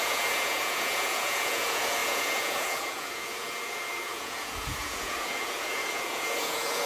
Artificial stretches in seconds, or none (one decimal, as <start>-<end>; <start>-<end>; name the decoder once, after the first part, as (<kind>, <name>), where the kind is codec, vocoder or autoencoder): 0.0-6.9 (vocoder, Vocos)